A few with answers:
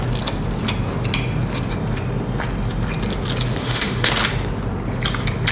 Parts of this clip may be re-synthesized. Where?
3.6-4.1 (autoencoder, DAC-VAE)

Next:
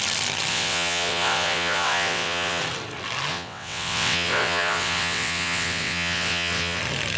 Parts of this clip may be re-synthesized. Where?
0.5-2.6 (vocoder, WaveNeXt); 3.3-6.8

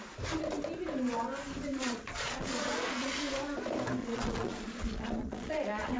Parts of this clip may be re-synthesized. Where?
1.7-3.2 (vocoder, Vocos); 4.0-6.0